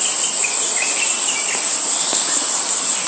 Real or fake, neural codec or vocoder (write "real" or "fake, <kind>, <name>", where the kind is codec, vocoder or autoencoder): real